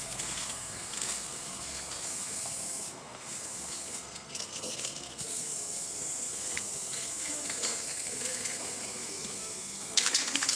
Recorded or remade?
remade